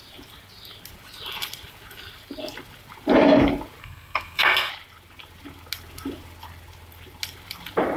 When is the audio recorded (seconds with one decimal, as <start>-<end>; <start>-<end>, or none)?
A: 0.0-3.8; 4.7-8.0